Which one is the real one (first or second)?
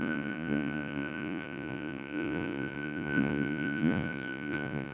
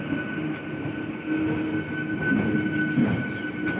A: second